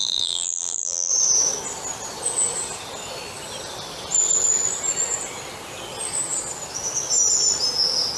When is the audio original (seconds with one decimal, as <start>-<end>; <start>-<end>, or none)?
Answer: 1.1-8.2